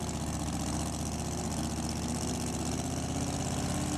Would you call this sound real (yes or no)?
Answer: yes